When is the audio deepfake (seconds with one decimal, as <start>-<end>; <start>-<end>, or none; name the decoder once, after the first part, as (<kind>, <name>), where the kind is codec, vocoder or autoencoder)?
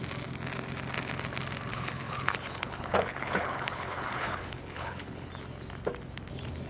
1.7-5.3 (codec, HILCodec)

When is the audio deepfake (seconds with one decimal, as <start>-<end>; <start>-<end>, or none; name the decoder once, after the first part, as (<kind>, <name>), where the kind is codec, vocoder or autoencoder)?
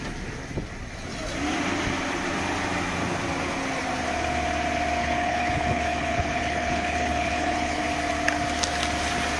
5.0-7.8 (codec, HILCodec)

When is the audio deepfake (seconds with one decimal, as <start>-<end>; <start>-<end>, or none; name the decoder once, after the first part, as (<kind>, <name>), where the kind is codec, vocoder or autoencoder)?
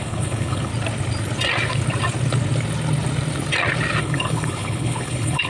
0.0-0.7 (codec, HILCodec); 4.0-5.5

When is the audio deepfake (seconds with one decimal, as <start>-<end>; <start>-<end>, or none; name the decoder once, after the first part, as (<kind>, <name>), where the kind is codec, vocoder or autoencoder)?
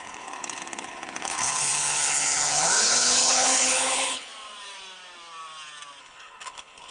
0.0-4.3 (codec, HILCodec); 6.0-6.9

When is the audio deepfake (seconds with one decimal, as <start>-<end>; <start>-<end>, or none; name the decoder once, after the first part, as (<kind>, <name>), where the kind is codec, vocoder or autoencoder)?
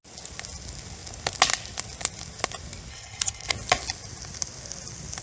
2.9-3.5 (codec, HILCodec)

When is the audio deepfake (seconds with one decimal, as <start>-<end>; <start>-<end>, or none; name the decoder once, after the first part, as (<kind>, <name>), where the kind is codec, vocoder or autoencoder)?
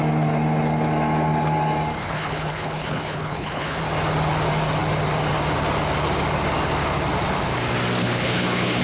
2.0-3.8 (codec, HILCodec); 8.0-8.8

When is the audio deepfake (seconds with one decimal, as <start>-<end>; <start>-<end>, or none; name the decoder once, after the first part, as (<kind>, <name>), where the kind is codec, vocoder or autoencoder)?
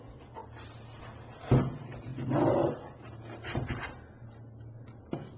none